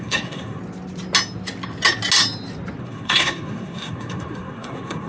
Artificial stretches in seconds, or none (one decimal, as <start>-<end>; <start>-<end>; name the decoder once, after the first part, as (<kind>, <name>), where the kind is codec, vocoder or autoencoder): 0.0-0.6 (codec, SNAC); 2.8-5.1